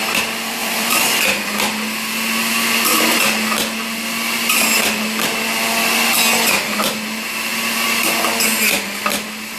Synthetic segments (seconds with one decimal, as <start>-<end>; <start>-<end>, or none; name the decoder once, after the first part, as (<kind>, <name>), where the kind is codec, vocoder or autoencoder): 0.6-1.2 (vocoder, BigVGAN v2)